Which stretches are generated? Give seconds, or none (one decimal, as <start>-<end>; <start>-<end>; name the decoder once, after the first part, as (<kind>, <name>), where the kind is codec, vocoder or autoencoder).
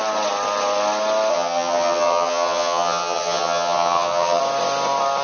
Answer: 1.3-4.4 (vocoder, HiFi-GAN)